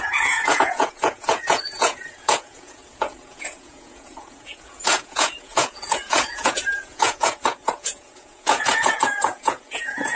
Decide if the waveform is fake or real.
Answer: fake